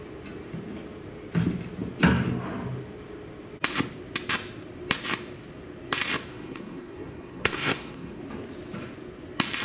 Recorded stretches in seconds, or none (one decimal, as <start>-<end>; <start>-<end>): 0.0-6.3; 8.2-9.6